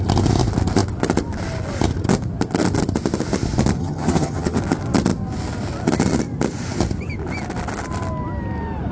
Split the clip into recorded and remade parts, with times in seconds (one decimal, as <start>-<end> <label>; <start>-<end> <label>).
0.0-3.8 recorded; 3.8-4.6 remade; 4.6-8.9 recorded